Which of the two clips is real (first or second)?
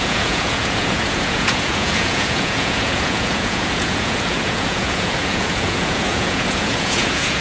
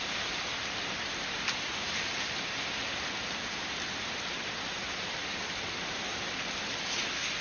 second